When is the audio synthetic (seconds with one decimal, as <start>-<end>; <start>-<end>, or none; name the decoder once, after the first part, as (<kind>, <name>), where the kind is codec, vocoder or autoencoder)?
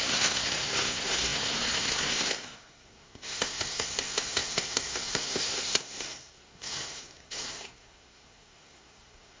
0.0-9.4 (codec, SNAC)